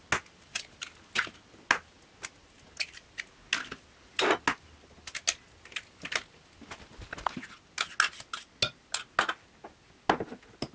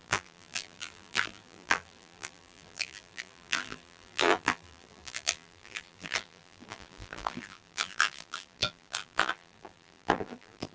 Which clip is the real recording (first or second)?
first